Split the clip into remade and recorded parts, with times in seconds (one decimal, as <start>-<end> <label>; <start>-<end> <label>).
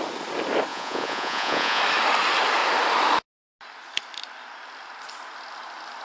0.0-0.7 recorded; 0.7-1.8 remade; 1.8-6.0 recorded